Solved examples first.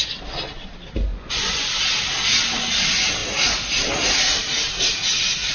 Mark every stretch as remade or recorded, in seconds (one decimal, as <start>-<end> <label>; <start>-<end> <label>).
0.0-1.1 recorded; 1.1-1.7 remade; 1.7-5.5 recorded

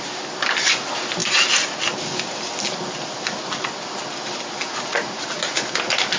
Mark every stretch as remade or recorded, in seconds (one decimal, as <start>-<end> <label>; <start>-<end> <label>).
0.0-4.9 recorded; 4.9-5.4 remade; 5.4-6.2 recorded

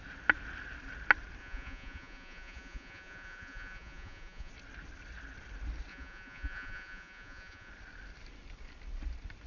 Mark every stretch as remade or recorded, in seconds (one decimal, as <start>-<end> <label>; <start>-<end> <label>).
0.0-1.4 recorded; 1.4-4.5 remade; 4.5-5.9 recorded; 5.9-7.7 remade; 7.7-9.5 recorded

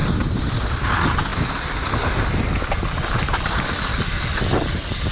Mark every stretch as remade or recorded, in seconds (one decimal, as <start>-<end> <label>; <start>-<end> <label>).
0.0-5.1 recorded

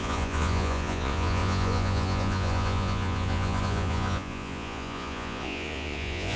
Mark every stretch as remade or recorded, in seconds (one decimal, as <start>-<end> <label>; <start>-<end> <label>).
0.0-6.4 remade